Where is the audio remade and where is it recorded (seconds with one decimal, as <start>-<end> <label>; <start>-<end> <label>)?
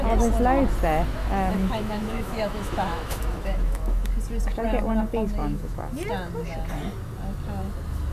0.0-1.2 recorded; 1.2-4.1 remade; 4.1-5.4 recorded; 5.4-5.9 remade; 5.9-8.1 recorded